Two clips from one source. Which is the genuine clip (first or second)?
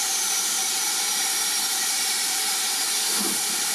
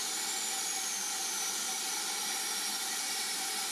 second